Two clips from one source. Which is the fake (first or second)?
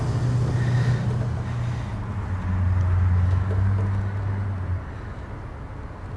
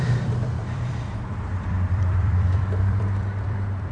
second